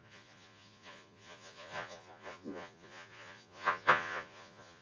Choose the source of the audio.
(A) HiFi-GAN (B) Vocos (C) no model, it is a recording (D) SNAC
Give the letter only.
B